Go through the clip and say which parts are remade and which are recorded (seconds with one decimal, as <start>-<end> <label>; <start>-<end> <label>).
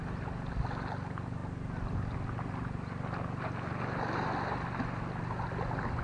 0.0-6.0 recorded